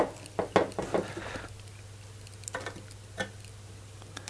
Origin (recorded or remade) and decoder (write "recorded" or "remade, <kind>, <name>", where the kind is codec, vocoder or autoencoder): recorded